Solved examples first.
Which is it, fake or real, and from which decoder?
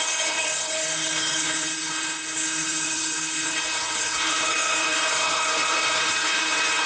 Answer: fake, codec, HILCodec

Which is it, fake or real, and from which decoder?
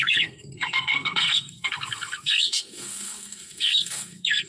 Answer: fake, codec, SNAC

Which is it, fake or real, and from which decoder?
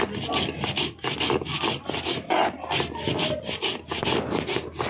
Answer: real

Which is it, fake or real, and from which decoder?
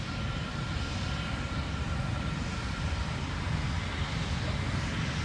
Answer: real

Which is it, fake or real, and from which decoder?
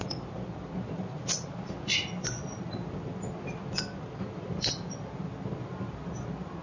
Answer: real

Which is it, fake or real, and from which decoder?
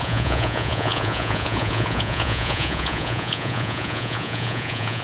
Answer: fake, vocoder, Vocos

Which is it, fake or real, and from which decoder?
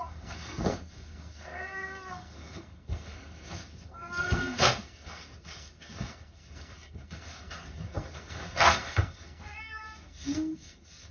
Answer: fake, codec, SNAC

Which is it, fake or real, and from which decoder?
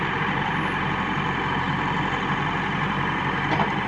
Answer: real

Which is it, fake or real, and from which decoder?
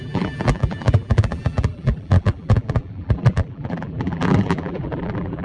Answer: fake, vocoder, BigVGAN v2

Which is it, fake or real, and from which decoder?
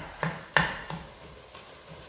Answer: real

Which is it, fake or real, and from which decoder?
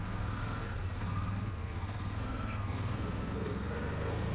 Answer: fake, codec, SNAC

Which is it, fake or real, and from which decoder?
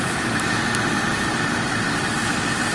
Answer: real